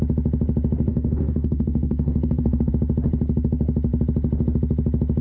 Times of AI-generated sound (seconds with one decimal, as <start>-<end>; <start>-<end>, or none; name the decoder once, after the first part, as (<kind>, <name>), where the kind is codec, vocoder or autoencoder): 0.9-2.7 (codec, SNAC)